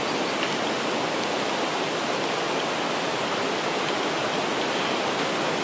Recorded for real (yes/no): yes